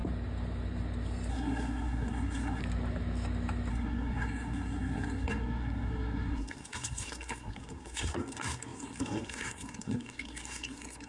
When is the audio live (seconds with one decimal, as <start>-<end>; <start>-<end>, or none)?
0.0-1.3; 2.6-3.7